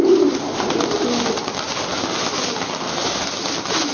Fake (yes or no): no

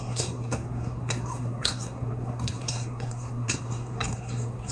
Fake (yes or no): yes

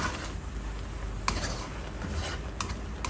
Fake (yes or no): no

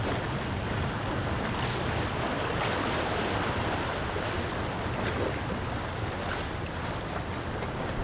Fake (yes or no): no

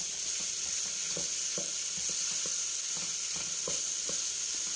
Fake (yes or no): no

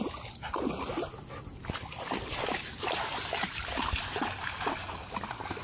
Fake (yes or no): no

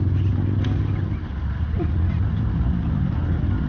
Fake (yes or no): no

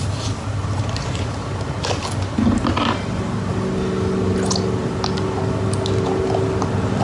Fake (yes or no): no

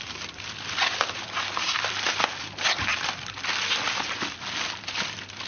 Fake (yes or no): yes